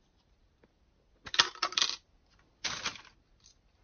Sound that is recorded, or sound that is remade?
recorded